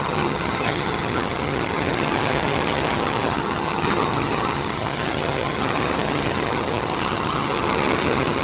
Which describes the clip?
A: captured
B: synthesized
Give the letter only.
B